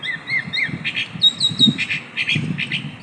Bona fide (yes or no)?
yes